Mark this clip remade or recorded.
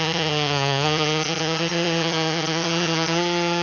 remade